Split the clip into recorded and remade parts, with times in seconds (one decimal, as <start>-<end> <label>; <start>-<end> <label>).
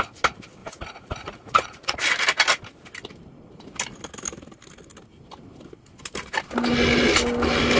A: 0.0-0.6 recorded; 0.6-2.0 remade; 2.0-7.8 recorded